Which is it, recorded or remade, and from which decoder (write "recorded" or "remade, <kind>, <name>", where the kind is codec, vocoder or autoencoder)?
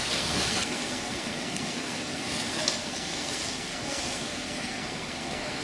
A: remade, codec, SNAC